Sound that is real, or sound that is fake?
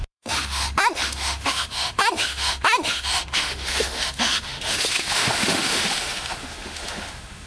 fake